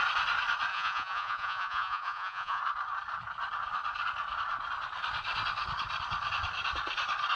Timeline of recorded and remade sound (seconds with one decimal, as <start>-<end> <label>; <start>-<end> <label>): 0.0-0.7 recorded; 0.7-2.6 remade; 2.6-7.3 recorded